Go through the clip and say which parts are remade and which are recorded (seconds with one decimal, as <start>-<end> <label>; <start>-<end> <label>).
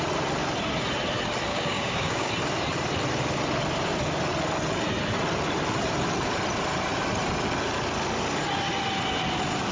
0.0-1.5 recorded; 1.5-2.3 remade; 2.3-9.7 recorded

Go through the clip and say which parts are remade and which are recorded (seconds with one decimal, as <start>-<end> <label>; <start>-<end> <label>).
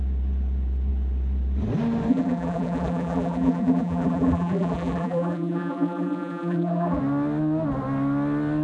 0.0-2.1 recorded; 2.1-7.0 remade; 7.0-8.6 recorded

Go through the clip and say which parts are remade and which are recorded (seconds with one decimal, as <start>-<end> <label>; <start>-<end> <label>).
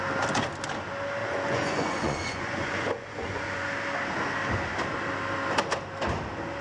0.0-1.2 recorded; 1.2-3.7 remade; 3.7-6.6 recorded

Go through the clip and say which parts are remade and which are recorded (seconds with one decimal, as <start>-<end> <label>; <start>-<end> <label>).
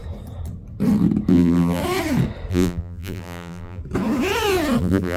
0.0-1.3 recorded; 1.3-1.8 remade; 1.8-2.5 recorded; 2.5-3.8 remade; 3.8-4.8 recorded; 4.8-5.2 remade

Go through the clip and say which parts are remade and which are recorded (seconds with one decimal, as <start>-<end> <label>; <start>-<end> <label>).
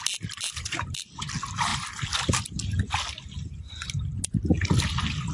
0.0-5.3 recorded